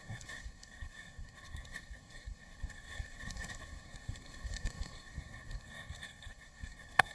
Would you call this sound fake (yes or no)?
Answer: yes